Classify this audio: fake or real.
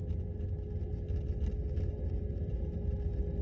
real